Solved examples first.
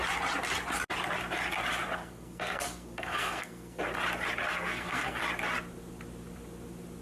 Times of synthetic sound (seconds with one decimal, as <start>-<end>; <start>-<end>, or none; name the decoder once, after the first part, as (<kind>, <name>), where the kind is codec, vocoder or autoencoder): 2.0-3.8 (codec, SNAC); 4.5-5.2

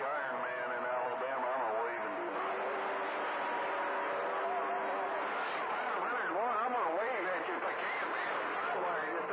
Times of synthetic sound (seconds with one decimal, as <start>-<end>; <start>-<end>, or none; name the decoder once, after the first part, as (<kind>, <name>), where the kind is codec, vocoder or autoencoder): none

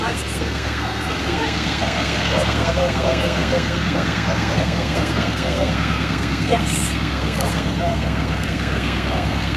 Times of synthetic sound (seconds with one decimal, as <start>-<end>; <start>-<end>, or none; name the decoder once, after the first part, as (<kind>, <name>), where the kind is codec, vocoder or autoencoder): 0.0-9.6 (codec, SNAC)

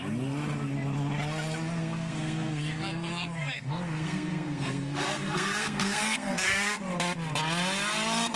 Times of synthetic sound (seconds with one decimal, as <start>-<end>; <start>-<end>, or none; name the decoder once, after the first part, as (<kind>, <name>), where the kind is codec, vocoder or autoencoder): 1.8-6.8 (codec, SNAC)

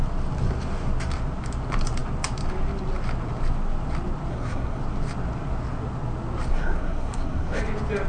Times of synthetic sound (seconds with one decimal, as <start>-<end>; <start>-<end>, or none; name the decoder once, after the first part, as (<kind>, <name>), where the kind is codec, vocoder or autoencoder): 4.3-4.8 (codec, SNAC); 6.5-7.6

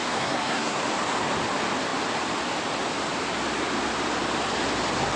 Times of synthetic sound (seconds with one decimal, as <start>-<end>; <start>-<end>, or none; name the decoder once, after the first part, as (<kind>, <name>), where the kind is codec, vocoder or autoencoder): 0.0-0.8 (codec, SNAC)

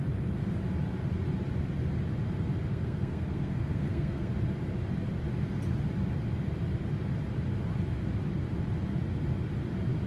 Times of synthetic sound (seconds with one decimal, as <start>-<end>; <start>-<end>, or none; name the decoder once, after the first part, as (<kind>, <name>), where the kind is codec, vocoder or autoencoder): 2.7-4.3 (codec, SNAC)

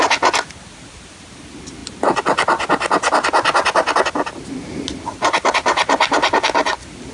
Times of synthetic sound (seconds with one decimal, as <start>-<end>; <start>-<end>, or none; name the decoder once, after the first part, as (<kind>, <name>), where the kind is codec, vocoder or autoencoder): none